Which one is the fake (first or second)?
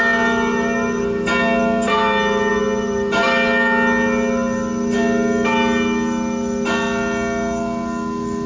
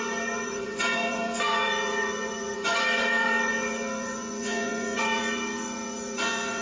second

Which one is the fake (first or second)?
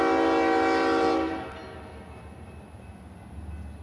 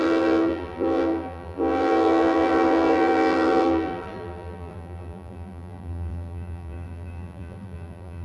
second